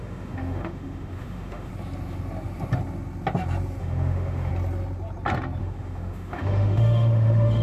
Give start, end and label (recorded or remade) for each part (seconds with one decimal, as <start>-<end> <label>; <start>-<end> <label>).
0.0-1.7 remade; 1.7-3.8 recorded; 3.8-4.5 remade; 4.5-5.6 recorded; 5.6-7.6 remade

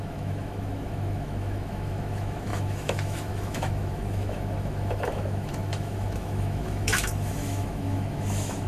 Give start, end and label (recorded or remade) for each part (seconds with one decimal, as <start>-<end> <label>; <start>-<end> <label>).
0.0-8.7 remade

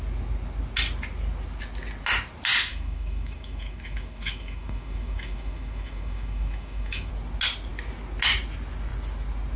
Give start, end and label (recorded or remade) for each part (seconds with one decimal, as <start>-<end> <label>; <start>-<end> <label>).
0.0-2.7 recorded; 2.7-7.1 remade; 7.1-9.6 recorded

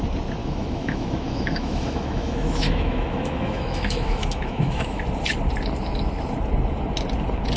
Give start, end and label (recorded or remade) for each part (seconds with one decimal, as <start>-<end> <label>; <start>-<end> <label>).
0.0-0.4 recorded; 0.4-5.0 remade; 5.0-7.6 recorded

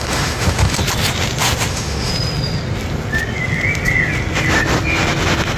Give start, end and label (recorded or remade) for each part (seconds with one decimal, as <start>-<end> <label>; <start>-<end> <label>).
0.0-0.8 remade; 0.8-1.7 recorded; 1.7-2.1 remade; 2.1-5.6 recorded